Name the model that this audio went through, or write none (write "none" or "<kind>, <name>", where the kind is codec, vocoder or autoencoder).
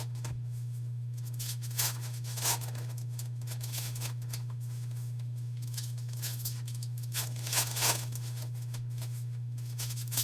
autoencoder, DAC-VAE